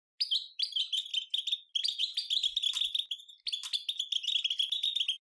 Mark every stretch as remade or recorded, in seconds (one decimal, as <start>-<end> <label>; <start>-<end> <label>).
0.0-5.3 recorded